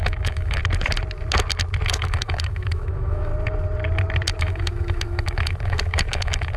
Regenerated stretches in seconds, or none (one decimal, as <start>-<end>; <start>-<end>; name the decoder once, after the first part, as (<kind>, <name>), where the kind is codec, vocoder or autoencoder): 0.0-0.6 (autoencoder, DAC-VAE); 1.9-3.3; 4.4-6.6